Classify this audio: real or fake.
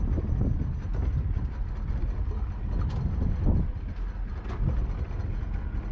real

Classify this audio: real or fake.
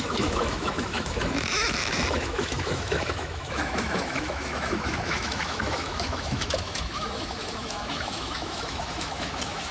fake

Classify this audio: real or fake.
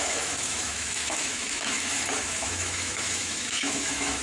fake